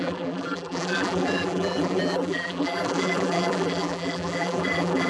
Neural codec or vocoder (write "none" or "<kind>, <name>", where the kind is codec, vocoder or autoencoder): vocoder, BigVGAN v2